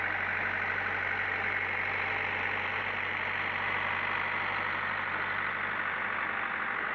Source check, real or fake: fake